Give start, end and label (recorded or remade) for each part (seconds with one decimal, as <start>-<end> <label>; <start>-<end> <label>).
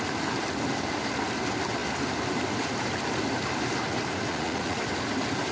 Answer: 0.0-4.3 recorded; 4.3-4.8 remade; 4.8-5.5 recorded